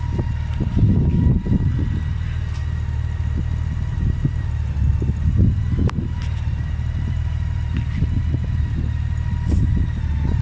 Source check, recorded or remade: recorded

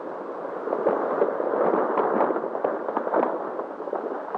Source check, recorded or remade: recorded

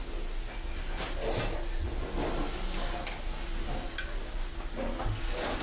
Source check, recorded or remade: recorded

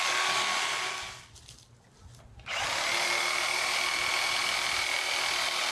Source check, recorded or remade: recorded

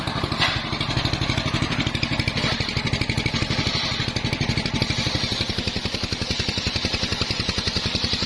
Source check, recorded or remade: remade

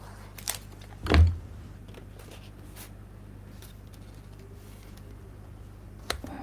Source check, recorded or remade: recorded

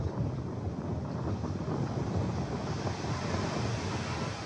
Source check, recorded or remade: recorded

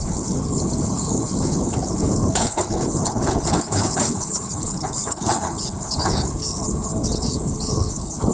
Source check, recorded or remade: remade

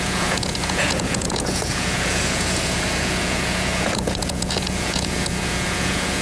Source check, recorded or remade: remade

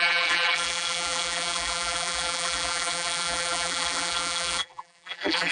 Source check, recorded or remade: remade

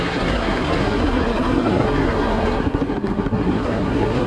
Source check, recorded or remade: remade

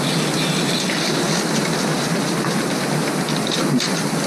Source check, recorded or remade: recorded